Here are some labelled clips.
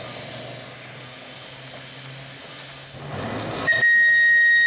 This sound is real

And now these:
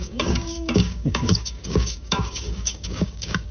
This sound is fake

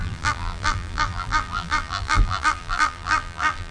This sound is fake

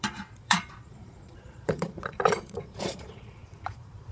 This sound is fake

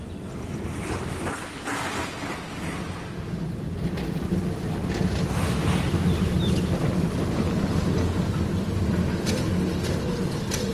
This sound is real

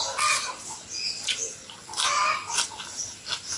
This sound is real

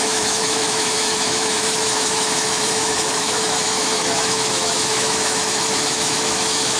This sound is fake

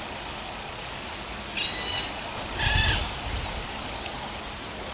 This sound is real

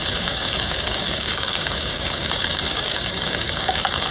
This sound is fake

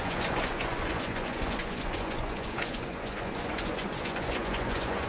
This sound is fake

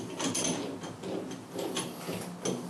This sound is real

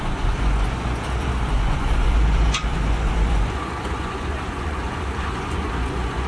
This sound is fake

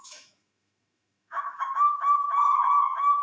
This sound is fake